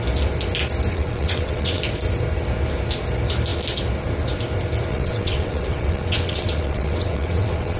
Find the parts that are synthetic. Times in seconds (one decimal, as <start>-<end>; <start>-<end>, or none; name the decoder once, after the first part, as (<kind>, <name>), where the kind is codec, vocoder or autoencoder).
0.9-1.8 (vocoder, WaveNeXt); 4.9-7.8